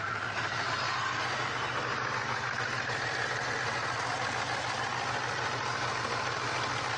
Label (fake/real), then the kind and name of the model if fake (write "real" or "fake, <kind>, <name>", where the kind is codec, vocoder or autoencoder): real